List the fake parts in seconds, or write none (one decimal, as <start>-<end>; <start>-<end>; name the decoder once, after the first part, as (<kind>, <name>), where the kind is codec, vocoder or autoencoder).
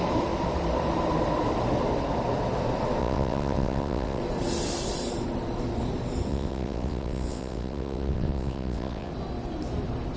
3.0-4.2 (vocoder, WaveNeXt); 6.3-9.1